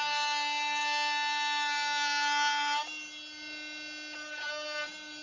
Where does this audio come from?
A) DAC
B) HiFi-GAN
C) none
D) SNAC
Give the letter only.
C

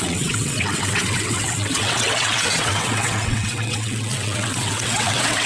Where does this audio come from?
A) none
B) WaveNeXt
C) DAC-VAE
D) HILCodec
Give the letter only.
B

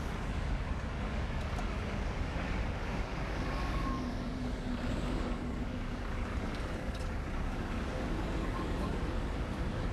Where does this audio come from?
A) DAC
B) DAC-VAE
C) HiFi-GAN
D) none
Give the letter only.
A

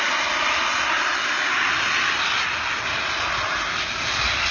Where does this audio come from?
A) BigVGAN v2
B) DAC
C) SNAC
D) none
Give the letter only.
D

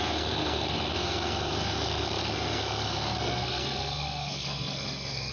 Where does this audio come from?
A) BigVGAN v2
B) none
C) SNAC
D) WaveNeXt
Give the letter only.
C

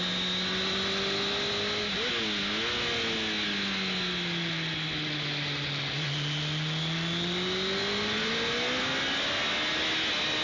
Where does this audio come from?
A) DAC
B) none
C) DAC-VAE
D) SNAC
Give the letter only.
B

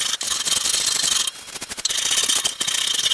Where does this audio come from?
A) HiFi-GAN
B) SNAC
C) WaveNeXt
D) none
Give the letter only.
D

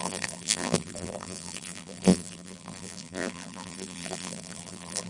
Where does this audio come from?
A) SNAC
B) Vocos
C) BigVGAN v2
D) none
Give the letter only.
C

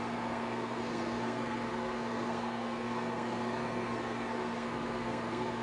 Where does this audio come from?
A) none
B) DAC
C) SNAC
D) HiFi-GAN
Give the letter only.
C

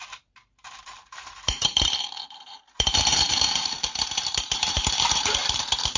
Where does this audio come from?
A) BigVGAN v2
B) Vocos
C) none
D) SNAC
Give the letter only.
A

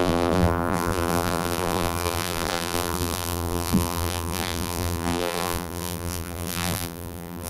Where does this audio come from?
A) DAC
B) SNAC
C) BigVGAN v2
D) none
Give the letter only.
C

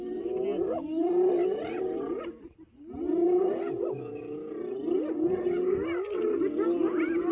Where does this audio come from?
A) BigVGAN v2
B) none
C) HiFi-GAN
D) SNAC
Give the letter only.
A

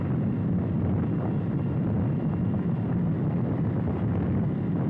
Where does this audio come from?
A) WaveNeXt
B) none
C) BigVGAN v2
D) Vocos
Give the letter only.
B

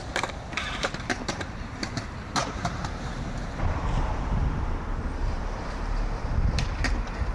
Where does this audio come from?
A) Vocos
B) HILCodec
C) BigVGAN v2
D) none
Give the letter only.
C